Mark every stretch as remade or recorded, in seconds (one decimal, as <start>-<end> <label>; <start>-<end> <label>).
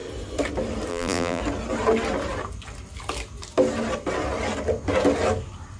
0.0-0.9 recorded; 0.9-1.4 remade; 1.4-5.8 recorded